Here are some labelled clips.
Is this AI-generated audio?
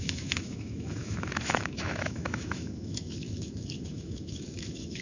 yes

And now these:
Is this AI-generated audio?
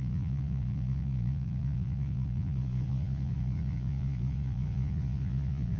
yes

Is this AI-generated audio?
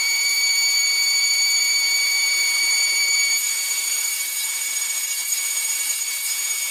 yes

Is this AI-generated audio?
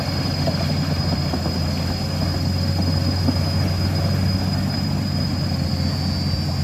no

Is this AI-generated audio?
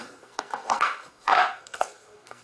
yes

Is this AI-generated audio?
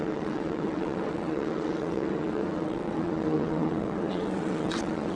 yes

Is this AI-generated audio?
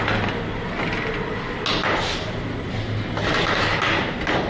no